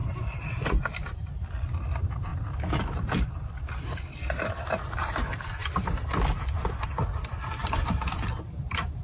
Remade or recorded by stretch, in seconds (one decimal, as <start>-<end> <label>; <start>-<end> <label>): 0.0-5.6 remade; 5.6-6.6 recorded; 6.6-9.0 remade